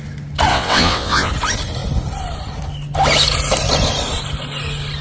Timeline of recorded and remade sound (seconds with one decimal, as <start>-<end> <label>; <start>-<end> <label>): 0.0-0.5 recorded; 0.5-1.3 remade; 1.3-5.0 recorded